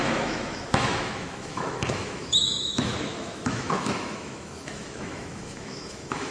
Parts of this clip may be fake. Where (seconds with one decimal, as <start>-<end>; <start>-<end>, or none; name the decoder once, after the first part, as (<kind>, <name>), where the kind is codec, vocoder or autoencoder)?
0.0-6.3 (autoencoder, DAC-VAE)